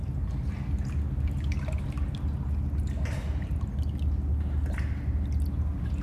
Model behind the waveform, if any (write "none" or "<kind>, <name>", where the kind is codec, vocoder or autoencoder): none